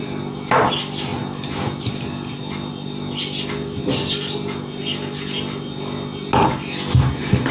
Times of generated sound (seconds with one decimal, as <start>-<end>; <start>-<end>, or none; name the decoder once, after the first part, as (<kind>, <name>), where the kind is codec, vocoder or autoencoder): none